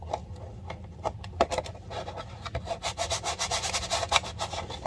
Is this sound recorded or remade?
recorded